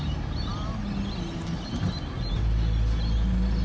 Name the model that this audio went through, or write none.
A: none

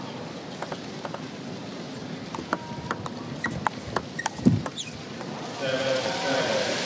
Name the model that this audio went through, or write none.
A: none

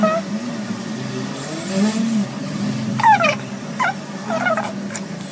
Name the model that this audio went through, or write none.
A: none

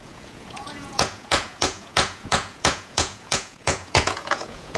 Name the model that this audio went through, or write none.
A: vocoder, Vocos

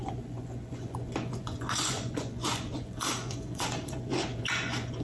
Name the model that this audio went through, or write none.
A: vocoder, Vocos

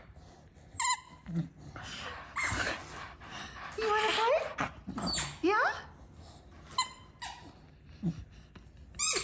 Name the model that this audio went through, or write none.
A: none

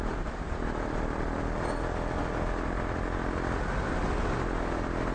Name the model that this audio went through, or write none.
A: none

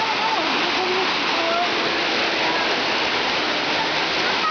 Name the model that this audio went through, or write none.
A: none